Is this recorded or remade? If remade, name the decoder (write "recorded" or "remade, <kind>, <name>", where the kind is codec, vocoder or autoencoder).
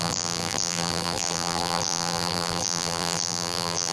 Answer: remade, vocoder, BigVGAN v2